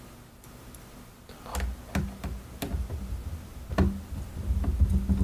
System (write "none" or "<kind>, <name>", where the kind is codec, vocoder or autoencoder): none